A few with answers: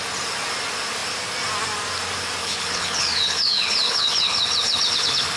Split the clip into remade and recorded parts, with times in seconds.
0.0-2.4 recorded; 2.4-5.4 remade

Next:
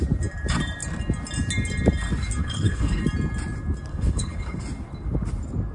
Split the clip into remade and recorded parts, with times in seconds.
0.0-2.4 recorded; 2.4-3.0 remade; 3.0-3.9 recorded; 3.9-4.6 remade; 4.6-5.7 recorded

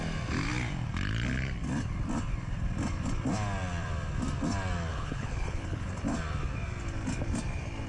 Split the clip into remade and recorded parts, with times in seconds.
0.0-4.9 recorded; 4.9-5.9 remade; 5.9-7.9 recorded

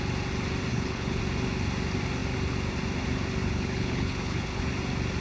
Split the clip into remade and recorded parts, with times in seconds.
0.0-0.7 recorded; 0.7-1.2 remade; 1.2-3.4 recorded; 3.4-4.6 remade; 4.6-5.2 recorded

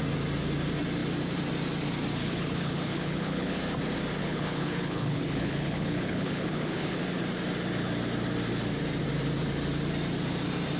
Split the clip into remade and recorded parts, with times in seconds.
0.0-2.2 recorded; 2.2-3.6 remade; 3.6-4.2 recorded; 4.2-7.0 remade; 7.0-10.8 recorded

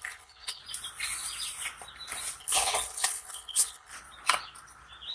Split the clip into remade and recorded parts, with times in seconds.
0.0-0.6 remade; 0.6-2.4 recorded; 2.4-3.9 remade; 3.9-5.1 recorded